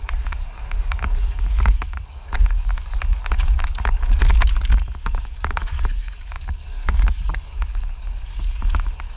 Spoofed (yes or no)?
yes